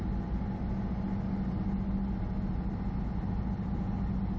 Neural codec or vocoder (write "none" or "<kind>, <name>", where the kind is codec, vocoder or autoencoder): none